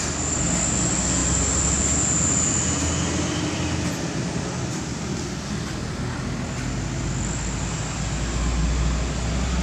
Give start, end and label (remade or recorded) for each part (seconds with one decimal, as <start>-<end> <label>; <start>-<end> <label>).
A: 0.0-9.6 recorded